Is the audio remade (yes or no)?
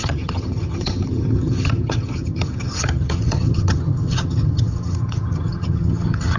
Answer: yes